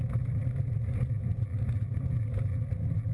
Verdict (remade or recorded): recorded